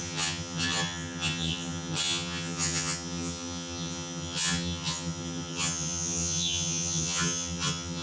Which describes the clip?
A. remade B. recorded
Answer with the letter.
A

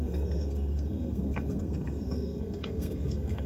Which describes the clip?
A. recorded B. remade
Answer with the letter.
B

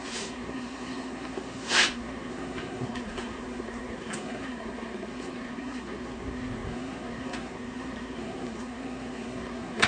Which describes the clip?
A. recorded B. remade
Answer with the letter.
B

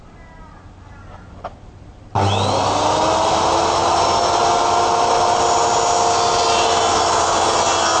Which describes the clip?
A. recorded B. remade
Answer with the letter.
A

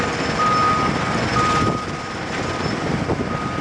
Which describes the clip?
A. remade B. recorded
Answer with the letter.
B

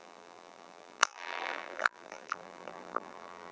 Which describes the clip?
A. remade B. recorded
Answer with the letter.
A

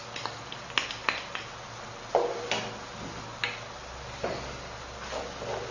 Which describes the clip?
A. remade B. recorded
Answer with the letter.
B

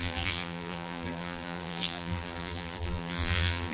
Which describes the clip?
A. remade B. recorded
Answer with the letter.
A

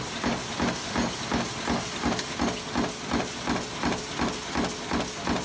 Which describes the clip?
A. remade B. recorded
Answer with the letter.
B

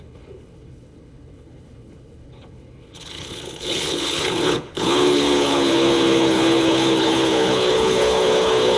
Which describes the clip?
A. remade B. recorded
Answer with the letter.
A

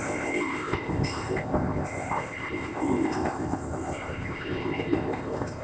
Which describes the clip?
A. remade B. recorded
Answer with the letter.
A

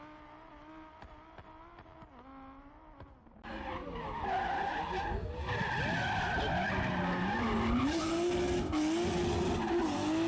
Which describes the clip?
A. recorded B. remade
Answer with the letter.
A